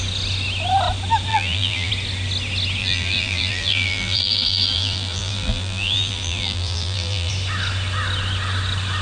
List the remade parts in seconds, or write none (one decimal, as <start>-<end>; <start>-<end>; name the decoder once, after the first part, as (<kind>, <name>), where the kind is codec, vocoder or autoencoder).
1.3-1.9 (vocoder, BigVGAN v2); 2.8-7.3